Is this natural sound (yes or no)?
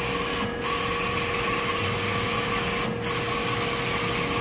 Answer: yes